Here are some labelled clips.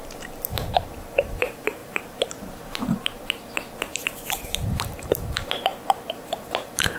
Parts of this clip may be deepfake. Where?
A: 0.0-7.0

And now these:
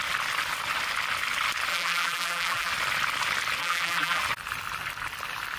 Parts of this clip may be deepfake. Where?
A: 1.7-2.7; 3.6-4.2

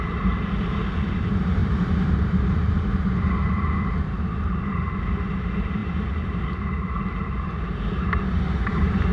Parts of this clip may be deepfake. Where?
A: 0.0-9.1

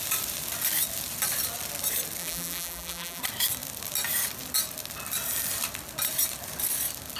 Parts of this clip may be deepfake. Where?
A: 2.2-3.2

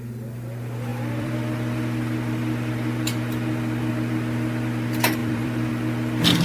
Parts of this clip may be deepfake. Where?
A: 0.9-3.9; 5.2-5.7